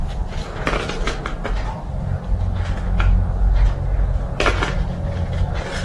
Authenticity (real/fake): real